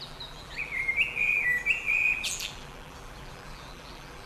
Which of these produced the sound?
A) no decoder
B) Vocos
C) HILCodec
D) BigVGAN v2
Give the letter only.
D